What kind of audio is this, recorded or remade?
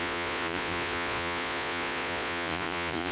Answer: remade